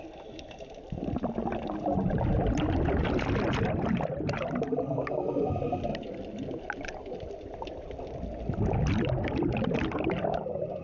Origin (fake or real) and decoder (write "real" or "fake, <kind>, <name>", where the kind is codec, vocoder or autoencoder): real